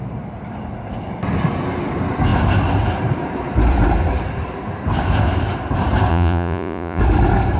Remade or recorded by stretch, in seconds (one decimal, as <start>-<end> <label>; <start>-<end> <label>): 0.0-6.1 recorded; 6.1-7.0 remade; 7.0-7.6 recorded